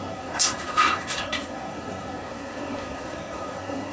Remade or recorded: remade